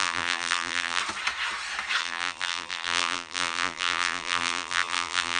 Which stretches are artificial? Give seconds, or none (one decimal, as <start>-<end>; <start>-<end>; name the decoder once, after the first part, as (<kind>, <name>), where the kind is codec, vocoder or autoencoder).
0.0-1.0 (vocoder, BigVGAN v2); 2.0-5.4